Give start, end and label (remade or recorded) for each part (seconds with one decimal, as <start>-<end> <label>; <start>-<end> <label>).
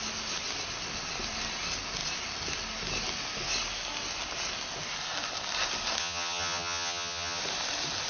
0.0-6.0 recorded; 6.0-7.4 remade; 7.4-8.1 recorded